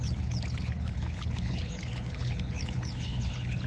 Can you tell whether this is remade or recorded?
remade